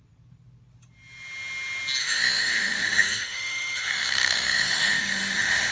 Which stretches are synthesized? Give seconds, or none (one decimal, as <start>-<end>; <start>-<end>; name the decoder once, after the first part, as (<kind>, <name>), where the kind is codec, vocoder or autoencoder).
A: 2.0-5.7 (autoencoder, DAC-VAE)